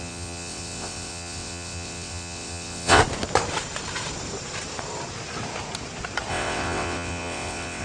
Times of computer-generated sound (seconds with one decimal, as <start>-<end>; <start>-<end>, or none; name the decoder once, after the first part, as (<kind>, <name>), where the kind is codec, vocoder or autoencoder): 0.0-3.0 (vocoder, WaveNeXt); 6.3-7.8